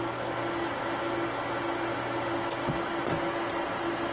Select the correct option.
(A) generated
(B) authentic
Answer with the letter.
B